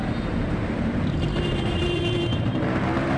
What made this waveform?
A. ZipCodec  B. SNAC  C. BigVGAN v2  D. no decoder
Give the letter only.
C